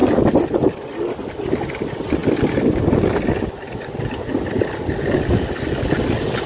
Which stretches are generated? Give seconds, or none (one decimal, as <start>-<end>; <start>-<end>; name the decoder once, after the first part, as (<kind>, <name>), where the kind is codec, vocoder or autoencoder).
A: 0.0-1.1 (vocoder, BigVGAN v2)